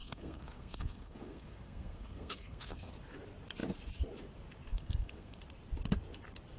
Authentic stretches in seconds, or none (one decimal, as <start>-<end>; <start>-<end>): 2.9-4.7; 5.4-6.6